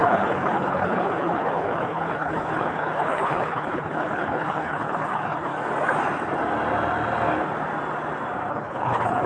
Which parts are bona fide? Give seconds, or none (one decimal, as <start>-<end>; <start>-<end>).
5.5-8.5